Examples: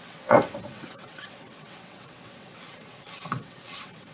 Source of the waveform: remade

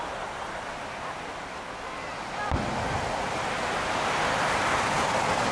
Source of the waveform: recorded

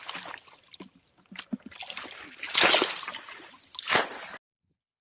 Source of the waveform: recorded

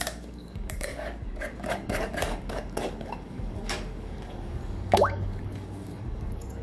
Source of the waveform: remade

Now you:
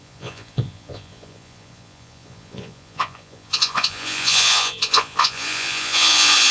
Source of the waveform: remade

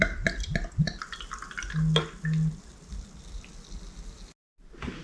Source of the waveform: recorded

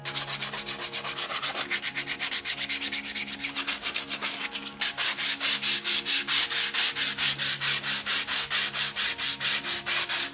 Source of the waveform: recorded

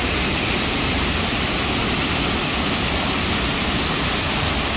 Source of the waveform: recorded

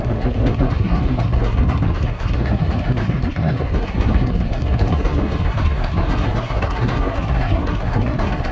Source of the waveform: remade